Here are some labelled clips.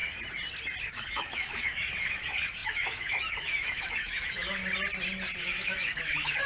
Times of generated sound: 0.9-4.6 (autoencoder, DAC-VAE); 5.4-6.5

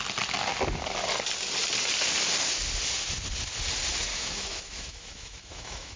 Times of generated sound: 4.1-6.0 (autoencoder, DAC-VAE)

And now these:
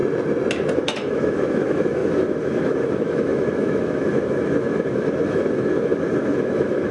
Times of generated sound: 0.7-6.9 (autoencoder, DAC-VAE)